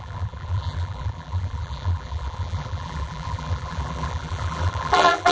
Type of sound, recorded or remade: remade